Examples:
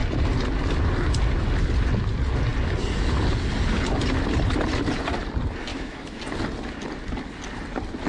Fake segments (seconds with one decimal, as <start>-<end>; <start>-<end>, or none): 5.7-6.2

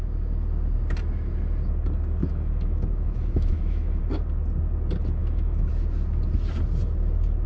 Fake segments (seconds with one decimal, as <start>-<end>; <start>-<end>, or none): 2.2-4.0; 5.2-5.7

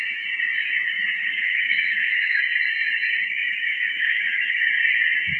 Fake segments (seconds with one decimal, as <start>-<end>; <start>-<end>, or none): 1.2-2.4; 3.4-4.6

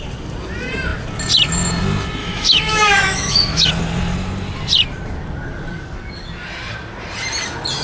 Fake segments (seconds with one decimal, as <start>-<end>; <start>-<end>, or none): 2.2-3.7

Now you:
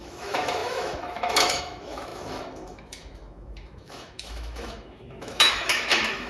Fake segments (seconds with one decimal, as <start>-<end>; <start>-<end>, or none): 0.0-6.3

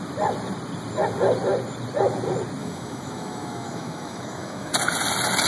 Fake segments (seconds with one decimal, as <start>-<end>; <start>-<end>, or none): 2.6-4.7

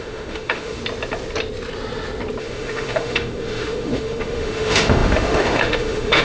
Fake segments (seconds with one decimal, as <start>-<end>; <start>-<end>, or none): 0.0-0.8; 2.4-6.2